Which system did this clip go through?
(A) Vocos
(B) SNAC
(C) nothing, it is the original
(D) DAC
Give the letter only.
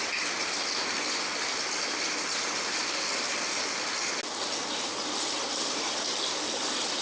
C